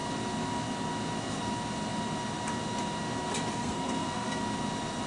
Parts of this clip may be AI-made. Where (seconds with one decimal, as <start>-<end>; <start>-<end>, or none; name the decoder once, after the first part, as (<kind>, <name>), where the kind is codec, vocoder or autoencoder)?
3.5-4.4 (codec, SNAC)